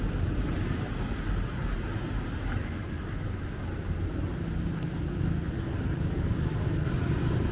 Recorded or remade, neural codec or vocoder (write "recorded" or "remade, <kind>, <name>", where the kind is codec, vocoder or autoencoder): recorded